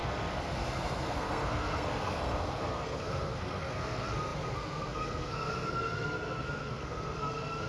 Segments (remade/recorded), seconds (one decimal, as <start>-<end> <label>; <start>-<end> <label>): 0.0-7.7 remade